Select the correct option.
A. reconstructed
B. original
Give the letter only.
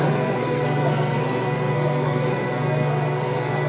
A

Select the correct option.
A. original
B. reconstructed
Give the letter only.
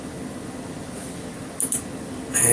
A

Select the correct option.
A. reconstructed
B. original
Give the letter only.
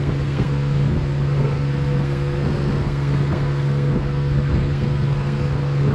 A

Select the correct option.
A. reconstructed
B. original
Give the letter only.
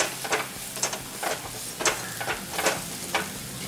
B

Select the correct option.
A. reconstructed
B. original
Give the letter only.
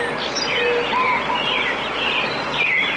A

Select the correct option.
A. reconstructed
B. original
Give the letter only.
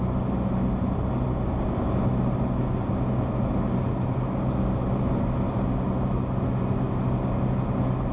B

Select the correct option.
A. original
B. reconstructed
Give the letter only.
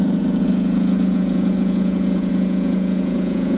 B